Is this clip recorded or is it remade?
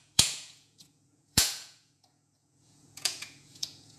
remade